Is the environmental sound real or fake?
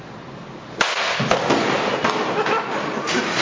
real